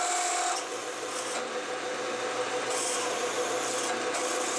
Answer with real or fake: real